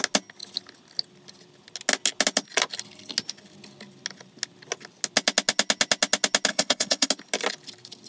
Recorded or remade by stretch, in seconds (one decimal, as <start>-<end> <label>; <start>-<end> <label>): 0.0-6.5 recorded; 6.5-7.1 remade; 7.1-8.1 recorded

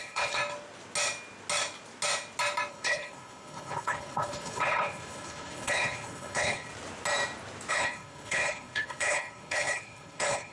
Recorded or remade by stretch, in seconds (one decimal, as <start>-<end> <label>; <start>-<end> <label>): 0.0-0.4 remade; 0.4-2.7 recorded; 2.7-6.7 remade; 6.7-7.7 recorded; 7.7-10.5 remade

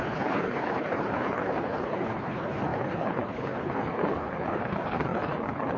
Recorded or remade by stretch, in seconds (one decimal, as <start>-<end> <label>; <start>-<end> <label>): 0.0-5.8 remade

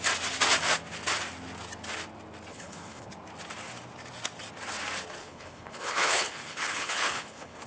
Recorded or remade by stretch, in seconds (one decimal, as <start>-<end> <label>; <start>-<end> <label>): 0.0-2.5 recorded; 2.5-3.1 remade; 3.1-5.2 recorded; 5.2-7.7 remade

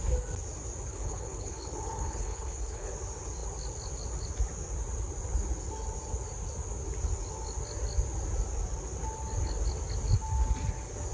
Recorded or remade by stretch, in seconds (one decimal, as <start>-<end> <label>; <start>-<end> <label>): 0.0-0.9 recorded; 0.9-2.9 remade; 2.9-11.1 recorded

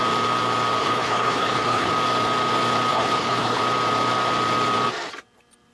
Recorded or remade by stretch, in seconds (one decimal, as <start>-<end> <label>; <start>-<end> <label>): 0.0-0.8 recorded; 0.8-1.9 remade; 1.9-2.9 recorded; 2.9-3.6 remade; 3.6-5.7 recorded